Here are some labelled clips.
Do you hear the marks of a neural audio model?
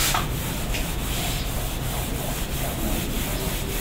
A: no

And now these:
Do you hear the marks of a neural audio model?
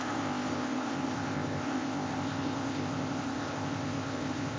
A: yes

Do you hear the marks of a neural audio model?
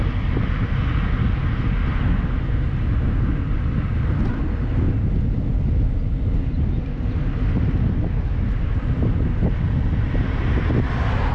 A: no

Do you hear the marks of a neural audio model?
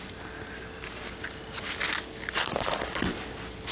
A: no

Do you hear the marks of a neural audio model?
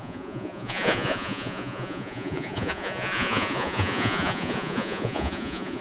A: yes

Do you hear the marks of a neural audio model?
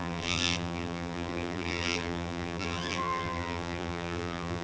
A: yes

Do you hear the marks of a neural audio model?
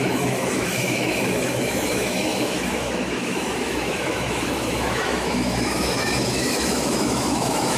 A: yes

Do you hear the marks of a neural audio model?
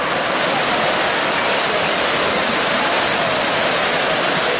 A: no